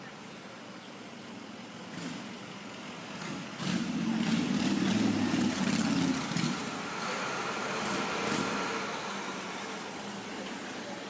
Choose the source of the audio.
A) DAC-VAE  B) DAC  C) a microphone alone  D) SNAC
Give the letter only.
C